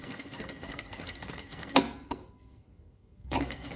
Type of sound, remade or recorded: remade